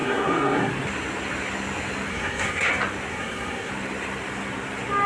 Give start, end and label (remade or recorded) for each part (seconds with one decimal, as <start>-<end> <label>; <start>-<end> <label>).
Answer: 0.0-0.7 remade; 0.7-2.1 recorded; 2.1-2.7 remade; 2.7-3.1 recorded; 3.1-3.7 remade; 3.7-5.1 recorded